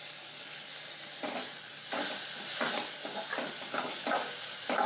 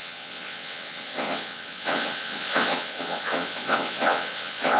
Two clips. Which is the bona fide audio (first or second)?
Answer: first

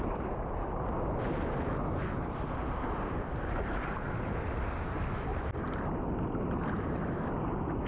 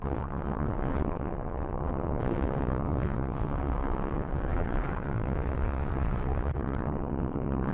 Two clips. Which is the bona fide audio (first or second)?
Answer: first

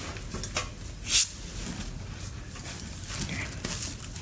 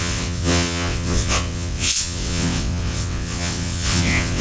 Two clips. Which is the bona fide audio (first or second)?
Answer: first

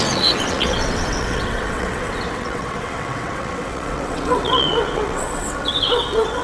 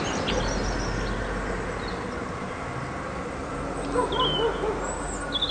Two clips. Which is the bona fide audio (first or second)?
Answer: second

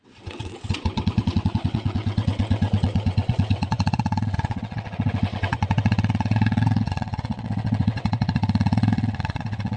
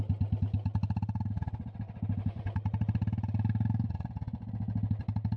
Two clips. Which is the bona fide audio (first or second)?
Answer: second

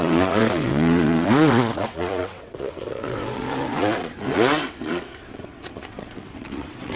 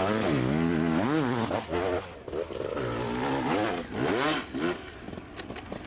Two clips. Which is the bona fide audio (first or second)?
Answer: second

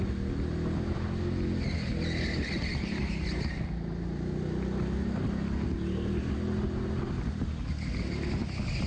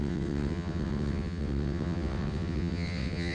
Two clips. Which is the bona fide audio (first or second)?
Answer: first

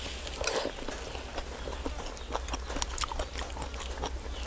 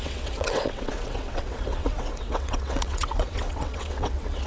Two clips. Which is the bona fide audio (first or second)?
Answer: first